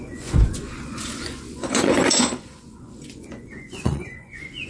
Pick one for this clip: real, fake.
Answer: fake